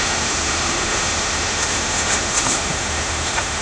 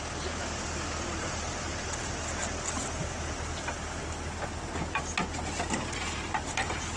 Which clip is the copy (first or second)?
first